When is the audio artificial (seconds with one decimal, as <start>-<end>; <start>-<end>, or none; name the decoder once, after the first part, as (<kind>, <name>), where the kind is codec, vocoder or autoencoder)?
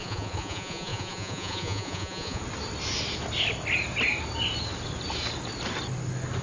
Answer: 0.0-2.4 (vocoder, Vocos)